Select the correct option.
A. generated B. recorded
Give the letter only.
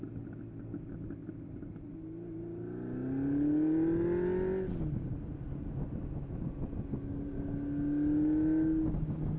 B